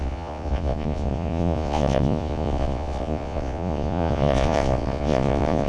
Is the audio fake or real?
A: fake